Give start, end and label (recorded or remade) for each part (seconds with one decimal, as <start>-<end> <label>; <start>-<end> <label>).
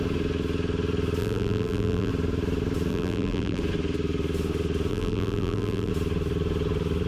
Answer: 0.0-1.2 recorded; 1.2-2.1 remade; 2.1-2.9 recorded; 2.9-3.6 remade; 3.6-4.9 recorded; 4.9-5.9 remade; 5.9-7.1 recorded